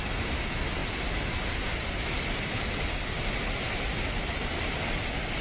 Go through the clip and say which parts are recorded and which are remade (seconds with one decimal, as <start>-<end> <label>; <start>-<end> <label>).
0.0-5.4 recorded